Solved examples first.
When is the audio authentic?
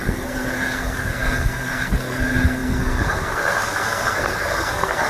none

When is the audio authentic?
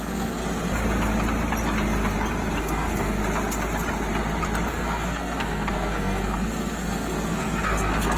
0.4-2.6; 3.2-4.7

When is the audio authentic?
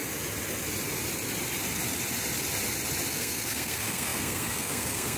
0.0-3.1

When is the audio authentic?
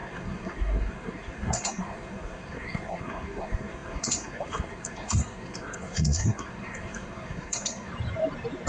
7.9-8.7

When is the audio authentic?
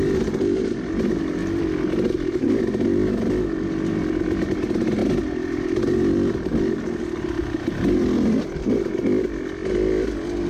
0.0-10.5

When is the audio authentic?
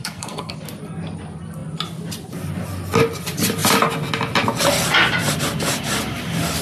0.5-6.6